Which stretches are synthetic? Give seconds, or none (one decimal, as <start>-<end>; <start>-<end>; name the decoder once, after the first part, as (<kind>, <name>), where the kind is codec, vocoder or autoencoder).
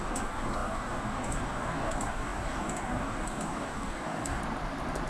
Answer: 0.0-4.4 (codec, DAC)